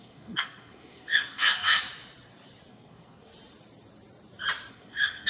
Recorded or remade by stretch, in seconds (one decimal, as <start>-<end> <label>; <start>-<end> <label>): 0.0-1.8 remade; 1.8-2.7 recorded; 2.7-3.3 remade; 3.3-4.7 recorded; 4.7-5.3 remade